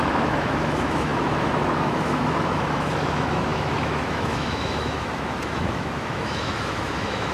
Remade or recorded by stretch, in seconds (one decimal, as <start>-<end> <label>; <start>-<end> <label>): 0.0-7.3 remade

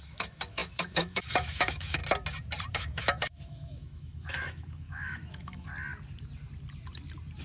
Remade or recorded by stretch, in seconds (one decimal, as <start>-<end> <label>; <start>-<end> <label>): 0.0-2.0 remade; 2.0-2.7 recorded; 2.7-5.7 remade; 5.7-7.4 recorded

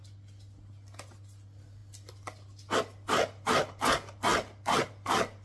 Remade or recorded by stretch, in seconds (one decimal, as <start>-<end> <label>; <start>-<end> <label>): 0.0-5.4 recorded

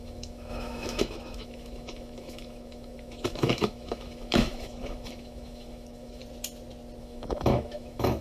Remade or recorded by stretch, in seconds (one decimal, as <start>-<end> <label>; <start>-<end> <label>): 0.0-6.2 remade; 6.2-7.0 recorded; 7.0-8.2 remade